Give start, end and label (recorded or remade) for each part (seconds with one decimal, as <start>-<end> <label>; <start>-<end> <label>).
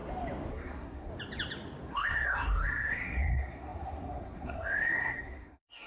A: 0.0-0.5 recorded; 0.5-1.1 remade; 1.1-1.9 recorded; 1.9-5.9 remade